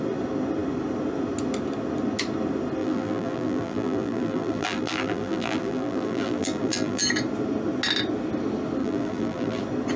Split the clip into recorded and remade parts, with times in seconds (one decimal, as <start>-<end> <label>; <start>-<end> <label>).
0.0-2.8 recorded; 2.8-7.0 remade; 7.0-8.8 recorded; 8.8-9.6 remade; 9.6-10.0 recorded